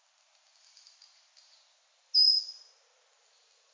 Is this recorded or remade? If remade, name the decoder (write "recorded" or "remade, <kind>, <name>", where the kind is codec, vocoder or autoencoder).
recorded